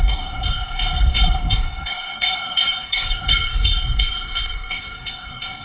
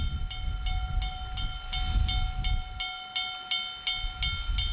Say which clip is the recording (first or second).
second